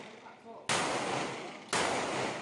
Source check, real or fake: real